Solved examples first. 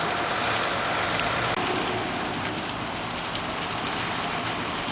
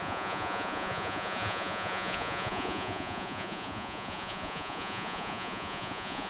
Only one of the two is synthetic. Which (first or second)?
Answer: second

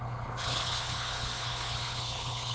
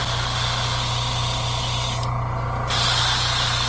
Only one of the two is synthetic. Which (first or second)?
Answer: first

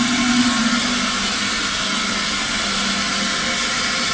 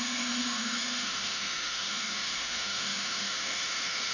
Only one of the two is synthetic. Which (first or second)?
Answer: second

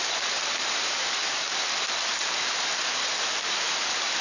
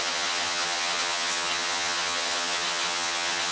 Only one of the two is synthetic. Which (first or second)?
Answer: second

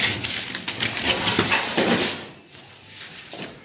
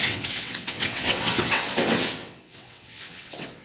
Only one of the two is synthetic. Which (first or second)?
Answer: second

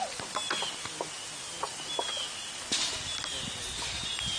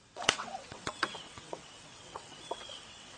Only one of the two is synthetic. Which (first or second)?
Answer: second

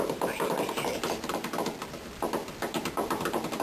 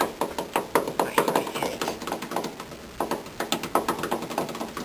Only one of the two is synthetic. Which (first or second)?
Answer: first